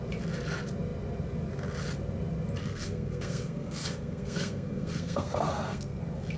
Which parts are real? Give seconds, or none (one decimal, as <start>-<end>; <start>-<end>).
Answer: 0.0-2.6; 6.0-6.4